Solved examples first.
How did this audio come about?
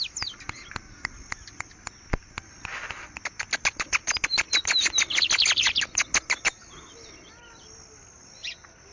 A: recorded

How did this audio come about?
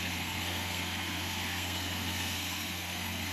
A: remade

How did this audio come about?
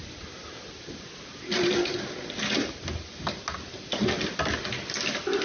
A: recorded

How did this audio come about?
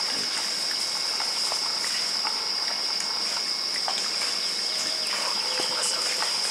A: recorded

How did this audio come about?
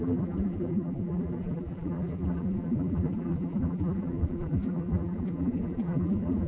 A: remade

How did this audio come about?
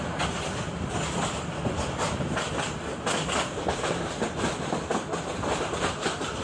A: recorded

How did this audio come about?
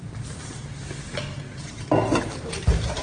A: recorded